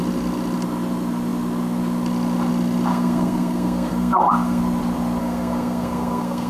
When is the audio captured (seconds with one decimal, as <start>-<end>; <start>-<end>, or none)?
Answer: 0.0-2.9; 4.6-5.2